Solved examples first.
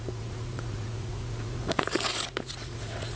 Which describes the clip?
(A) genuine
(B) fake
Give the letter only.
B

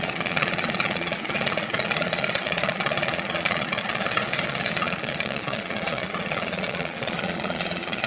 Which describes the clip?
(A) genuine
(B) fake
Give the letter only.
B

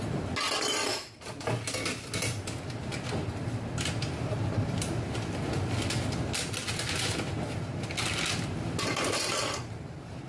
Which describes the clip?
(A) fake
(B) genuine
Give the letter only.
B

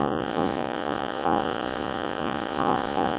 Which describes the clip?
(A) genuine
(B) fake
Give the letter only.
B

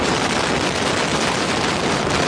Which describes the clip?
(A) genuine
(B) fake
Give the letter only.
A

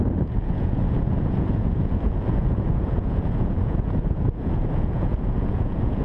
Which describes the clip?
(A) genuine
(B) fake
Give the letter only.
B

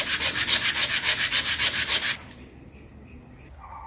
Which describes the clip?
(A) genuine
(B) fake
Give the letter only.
A